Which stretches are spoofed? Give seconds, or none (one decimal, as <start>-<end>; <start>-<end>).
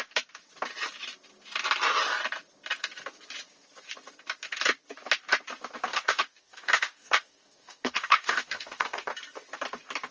5.9-9.1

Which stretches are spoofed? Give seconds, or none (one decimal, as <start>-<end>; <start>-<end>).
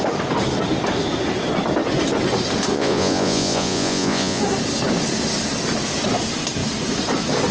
2.7-4.4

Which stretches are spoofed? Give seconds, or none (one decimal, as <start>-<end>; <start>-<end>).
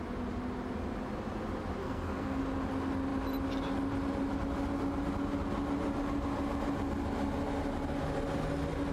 1.8-2.4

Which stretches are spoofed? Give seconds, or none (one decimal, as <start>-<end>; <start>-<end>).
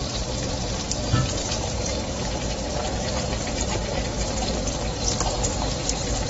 0.0-4.1; 5.3-6.3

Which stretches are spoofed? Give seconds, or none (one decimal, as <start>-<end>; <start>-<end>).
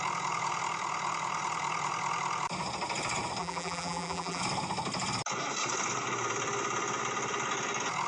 3.4-4.4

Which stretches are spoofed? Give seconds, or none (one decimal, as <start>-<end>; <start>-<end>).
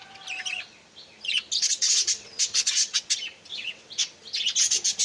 1.6-3.1; 3.5-4.1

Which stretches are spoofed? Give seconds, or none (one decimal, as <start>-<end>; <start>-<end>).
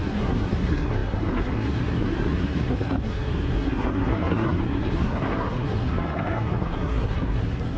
0.0-7.8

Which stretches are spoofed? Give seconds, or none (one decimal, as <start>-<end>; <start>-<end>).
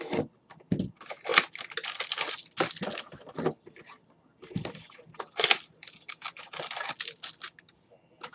none